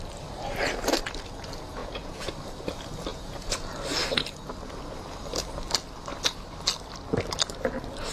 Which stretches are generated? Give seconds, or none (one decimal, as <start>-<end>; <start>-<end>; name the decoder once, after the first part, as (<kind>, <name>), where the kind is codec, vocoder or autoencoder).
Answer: 1.8-2.3 (vocoder, Vocos); 3.1-3.6